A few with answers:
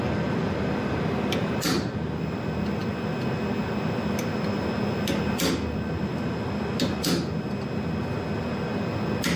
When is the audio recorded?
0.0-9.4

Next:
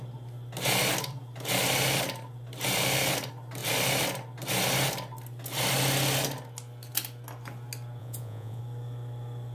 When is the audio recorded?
0.0-8.0; 8.6-9.5

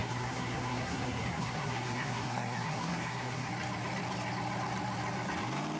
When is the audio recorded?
3.5-5.8

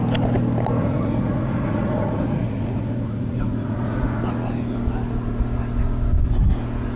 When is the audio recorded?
0.0-0.8; 4.2-7.0

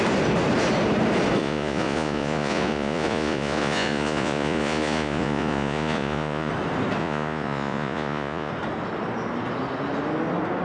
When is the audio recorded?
0.0-1.4; 6.5-7.0; 8.5-10.6